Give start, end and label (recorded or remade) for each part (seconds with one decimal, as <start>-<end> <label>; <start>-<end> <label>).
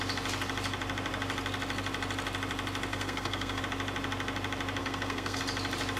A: 0.0-2.9 recorded; 2.9-3.6 remade; 3.6-4.8 recorded; 4.8-5.4 remade; 5.4-6.0 recorded